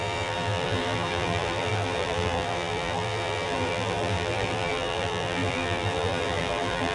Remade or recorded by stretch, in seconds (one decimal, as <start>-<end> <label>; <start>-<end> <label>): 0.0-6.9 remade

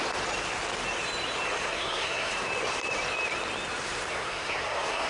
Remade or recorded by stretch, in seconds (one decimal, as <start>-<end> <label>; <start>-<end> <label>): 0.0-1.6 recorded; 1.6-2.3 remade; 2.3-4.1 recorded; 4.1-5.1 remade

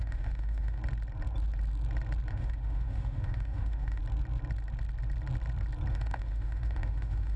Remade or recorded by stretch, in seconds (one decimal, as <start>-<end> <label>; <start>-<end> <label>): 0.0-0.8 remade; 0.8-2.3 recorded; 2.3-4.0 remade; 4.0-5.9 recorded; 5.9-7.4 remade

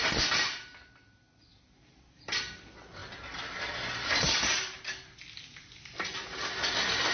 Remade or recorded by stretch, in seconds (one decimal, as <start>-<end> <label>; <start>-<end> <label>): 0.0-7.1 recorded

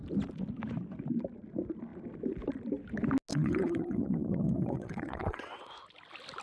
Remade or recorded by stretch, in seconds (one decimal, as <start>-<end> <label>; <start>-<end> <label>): 0.0-3.3 recorded; 3.3-5.7 remade; 5.7-6.4 recorded

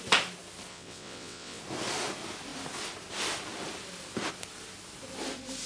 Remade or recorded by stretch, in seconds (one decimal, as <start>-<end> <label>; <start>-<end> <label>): 0.0-0.7 recorded; 0.7-1.6 remade; 1.6-5.7 recorded